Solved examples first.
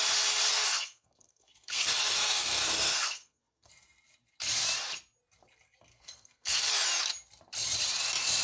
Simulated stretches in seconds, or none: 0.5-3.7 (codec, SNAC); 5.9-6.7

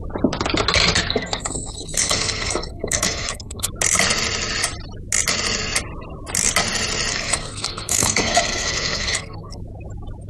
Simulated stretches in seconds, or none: 1.1-3.7 (codec, SNAC); 7.1-9.6

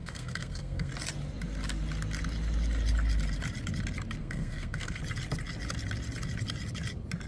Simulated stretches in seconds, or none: 0.0-0.9 (codec, SNAC); 4.2-5.0

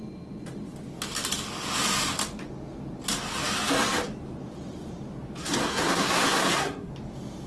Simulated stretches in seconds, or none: 5.4-6.9 (codec, SNAC)

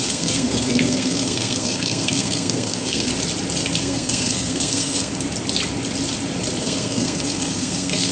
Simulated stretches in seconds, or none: 0.0-3.1 (codec, SNAC); 3.8-5.1; 6.6-8.1